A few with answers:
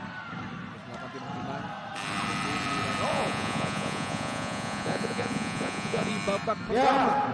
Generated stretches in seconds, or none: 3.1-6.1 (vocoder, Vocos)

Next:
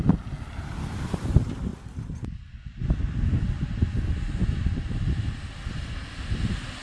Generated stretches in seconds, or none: none

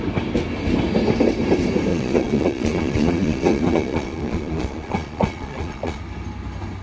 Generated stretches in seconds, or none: 1.9-6.0 (vocoder, Vocos)